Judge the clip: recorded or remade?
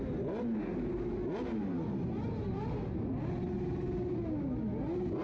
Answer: recorded